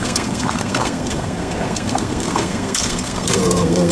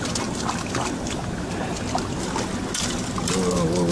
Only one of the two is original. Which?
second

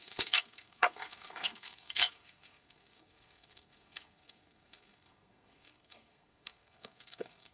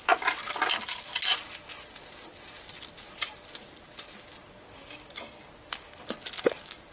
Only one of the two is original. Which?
second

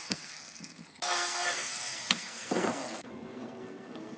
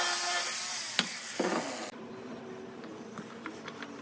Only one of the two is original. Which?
second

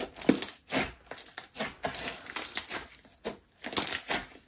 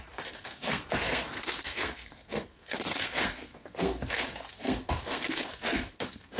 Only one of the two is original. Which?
first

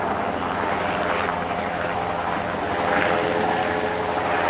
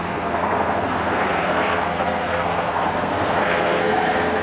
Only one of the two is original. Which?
first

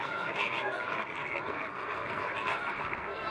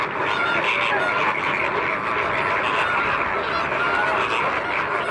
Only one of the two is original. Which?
second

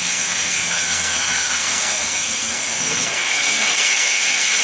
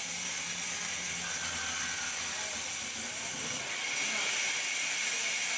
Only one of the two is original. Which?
second